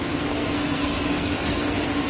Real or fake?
fake